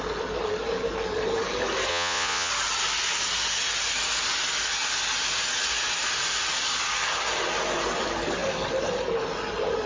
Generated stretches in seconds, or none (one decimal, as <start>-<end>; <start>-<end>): 1.9-2.5